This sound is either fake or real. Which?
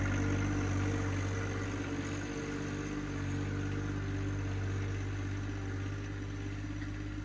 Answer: real